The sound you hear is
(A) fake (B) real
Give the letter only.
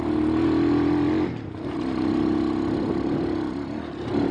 B